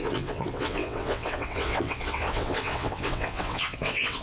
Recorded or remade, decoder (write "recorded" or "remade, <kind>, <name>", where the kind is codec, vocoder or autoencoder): remade, vocoder, WaveNeXt